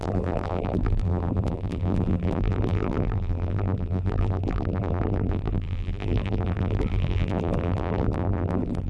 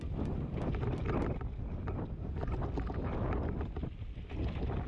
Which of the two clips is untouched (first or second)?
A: second